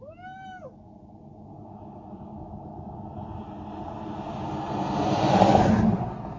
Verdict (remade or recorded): recorded